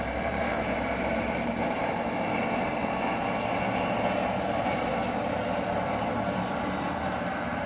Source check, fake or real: fake